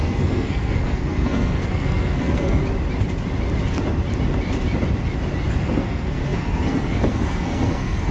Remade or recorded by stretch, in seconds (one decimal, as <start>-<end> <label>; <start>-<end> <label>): 0.0-2.6 remade; 2.6-5.6 recorded; 5.6-8.1 remade